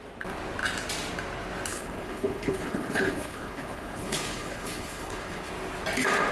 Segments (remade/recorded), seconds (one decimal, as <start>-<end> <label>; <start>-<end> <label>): 0.0-1.7 recorded; 1.7-5.5 remade; 5.5-6.3 recorded